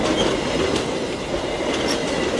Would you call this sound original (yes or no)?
yes